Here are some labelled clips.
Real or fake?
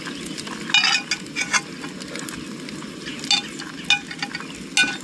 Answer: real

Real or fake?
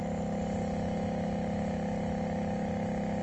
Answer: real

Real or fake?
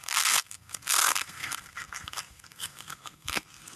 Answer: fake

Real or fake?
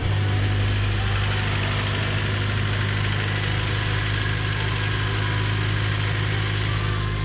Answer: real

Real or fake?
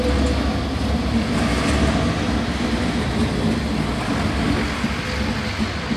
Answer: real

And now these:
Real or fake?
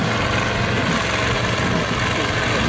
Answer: real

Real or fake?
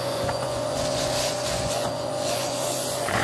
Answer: fake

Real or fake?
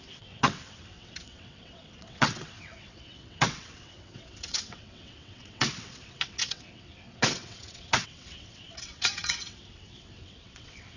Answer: fake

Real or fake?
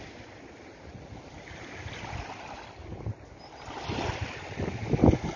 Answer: real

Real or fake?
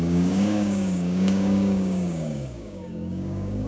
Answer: fake